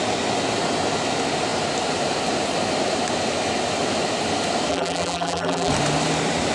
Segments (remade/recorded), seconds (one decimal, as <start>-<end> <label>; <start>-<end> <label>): 0.0-4.7 recorded; 4.7-5.7 remade; 5.7-6.5 recorded

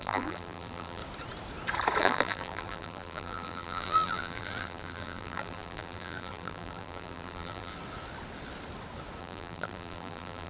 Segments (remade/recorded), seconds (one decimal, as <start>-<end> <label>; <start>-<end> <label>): 0.0-1.0 remade; 1.0-2.0 recorded; 2.0-7.7 remade; 7.7-9.2 recorded; 9.2-10.5 remade

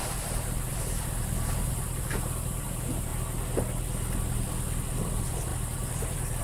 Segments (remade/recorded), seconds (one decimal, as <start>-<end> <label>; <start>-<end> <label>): 0.0-3.1 remade; 3.1-4.3 recorded; 4.3-6.4 remade

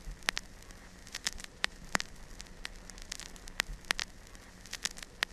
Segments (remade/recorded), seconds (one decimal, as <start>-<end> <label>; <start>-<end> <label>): 0.0-1.0 recorded; 1.0-2.0 remade; 2.0-5.3 recorded

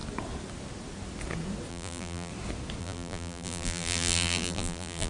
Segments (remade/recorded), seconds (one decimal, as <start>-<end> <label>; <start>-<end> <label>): 0.0-1.7 recorded; 1.7-2.3 remade; 2.3-2.8 recorded; 2.8-5.1 remade

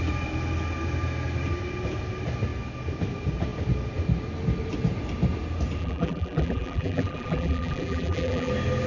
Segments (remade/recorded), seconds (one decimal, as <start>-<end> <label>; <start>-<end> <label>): 0.0-5.8 recorded; 5.8-8.5 remade; 8.5-8.9 recorded